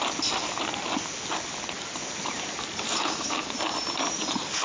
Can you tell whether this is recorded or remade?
recorded